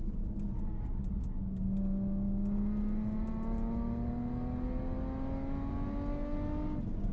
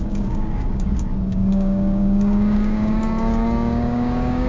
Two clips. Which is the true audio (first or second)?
first